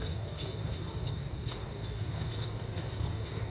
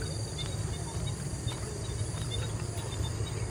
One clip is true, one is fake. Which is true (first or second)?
second